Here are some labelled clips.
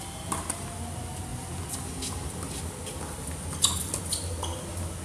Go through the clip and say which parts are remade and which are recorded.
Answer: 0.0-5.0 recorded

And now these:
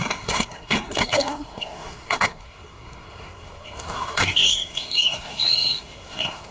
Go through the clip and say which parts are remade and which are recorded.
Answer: 0.0-6.5 remade